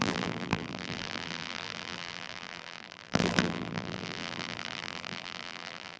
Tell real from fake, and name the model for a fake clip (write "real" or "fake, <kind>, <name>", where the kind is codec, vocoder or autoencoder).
fake, vocoder, BigVGAN v2